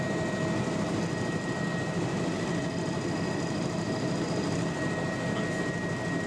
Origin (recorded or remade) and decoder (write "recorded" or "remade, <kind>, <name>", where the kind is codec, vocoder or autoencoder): recorded